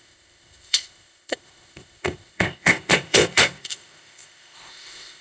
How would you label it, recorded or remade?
remade